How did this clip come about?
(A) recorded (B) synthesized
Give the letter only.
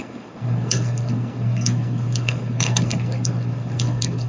B